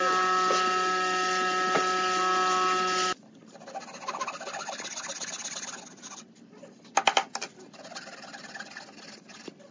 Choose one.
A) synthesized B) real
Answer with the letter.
B